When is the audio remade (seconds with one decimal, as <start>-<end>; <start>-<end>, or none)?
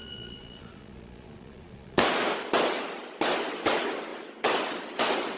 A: 0.0-2.0